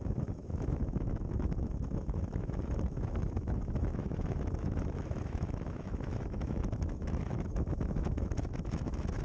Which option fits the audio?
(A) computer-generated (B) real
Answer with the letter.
A